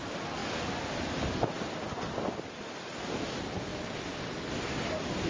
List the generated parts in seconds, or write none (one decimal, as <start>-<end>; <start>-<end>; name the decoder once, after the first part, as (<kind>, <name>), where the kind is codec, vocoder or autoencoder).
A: none